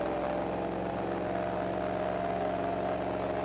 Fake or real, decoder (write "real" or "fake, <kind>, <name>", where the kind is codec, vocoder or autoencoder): real